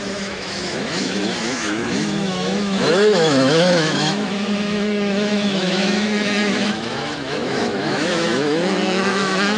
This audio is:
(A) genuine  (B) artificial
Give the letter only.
B